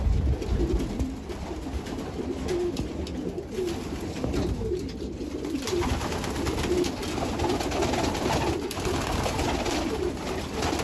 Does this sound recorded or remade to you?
recorded